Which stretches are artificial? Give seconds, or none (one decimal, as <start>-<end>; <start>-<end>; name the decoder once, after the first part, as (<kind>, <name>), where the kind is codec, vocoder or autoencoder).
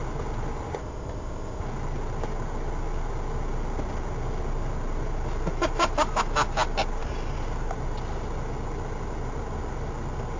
0.8-1.6 (codec, ZipCodec)